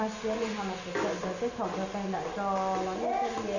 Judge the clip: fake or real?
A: real